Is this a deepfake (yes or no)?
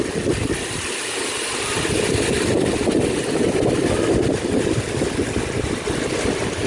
no